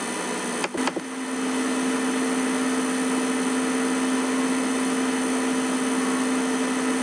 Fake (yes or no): no